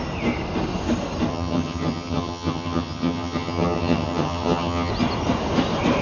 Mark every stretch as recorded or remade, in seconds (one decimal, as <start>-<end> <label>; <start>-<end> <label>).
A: 0.0-1.3 recorded; 1.3-4.9 remade; 4.9-6.0 recorded